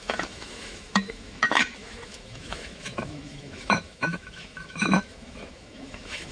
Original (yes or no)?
no